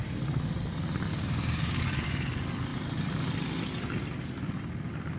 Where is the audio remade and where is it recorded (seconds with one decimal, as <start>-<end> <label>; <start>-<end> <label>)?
0.0-1.1 recorded; 1.1-1.8 remade; 1.8-5.2 recorded